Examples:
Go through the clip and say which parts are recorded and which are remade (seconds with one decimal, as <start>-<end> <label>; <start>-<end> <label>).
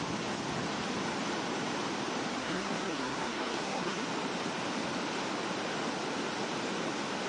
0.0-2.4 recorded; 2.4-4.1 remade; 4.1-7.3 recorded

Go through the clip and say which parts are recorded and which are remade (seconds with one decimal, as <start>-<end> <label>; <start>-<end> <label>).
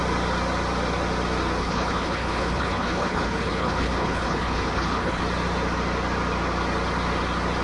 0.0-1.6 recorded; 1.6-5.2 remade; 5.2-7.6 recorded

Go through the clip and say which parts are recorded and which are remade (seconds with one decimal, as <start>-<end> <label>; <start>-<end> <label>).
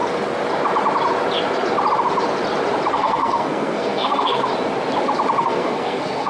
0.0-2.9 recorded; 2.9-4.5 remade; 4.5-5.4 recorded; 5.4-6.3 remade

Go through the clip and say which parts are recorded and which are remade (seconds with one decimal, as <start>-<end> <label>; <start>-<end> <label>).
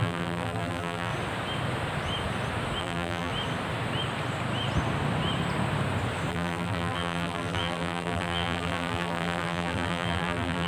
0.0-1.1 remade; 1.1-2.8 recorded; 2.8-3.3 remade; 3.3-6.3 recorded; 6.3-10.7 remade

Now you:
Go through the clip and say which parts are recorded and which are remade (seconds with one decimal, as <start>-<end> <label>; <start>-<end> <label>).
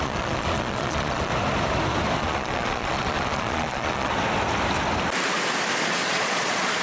0.0-1.3 remade; 1.3-2.2 recorded; 2.2-4.1 remade; 4.1-5.9 recorded; 5.9-6.8 remade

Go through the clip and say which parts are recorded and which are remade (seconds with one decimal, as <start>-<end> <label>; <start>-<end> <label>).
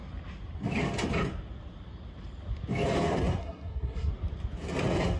0.0-3.4 recorded; 3.4-4.1 remade; 4.1-5.2 recorded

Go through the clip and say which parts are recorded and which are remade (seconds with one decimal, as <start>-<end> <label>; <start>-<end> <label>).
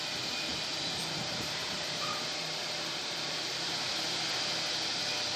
0.0-0.5 recorded; 0.5-3.7 remade; 3.7-5.4 recorded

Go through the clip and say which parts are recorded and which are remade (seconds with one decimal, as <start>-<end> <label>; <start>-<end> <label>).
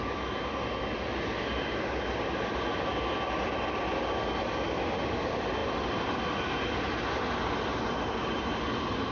0.0-9.1 recorded